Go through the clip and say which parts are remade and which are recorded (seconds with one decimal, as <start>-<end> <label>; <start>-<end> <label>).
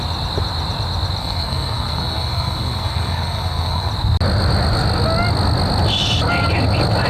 0.0-1.2 recorded; 1.2-3.9 remade; 3.9-7.1 recorded